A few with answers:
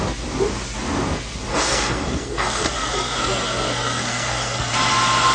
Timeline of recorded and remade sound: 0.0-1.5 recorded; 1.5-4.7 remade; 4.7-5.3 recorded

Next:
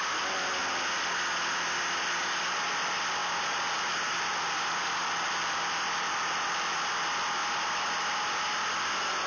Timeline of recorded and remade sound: 0.0-0.6 recorded; 0.6-2.1 remade; 2.1-3.2 recorded; 3.2-4.9 remade; 4.9-7.4 recorded; 7.4-8.1 remade; 8.1-9.3 recorded

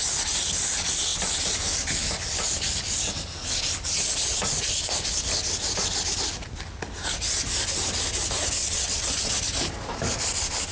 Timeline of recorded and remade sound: 0.0-8.6 recorded; 8.6-9.3 remade; 9.3-10.7 recorded

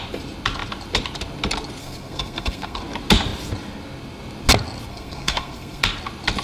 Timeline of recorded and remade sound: 0.0-1.8 recorded; 1.8-2.8 remade; 2.8-4.9 recorded; 4.9-5.8 remade; 5.8-6.4 recorded

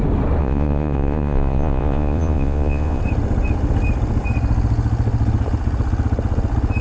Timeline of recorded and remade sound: 0.0-0.4 recorded; 0.4-3.0 remade; 3.0-6.8 recorded

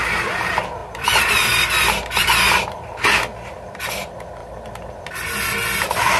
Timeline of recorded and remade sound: 0.0-0.8 recorded; 0.8-3.9 remade; 3.9-4.4 recorded; 4.4-5.0 remade; 5.0-6.2 recorded

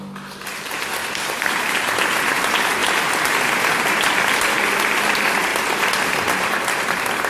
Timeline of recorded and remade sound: 0.0-7.3 recorded

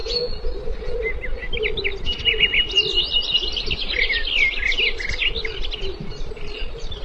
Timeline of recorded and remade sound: 0.0-7.0 recorded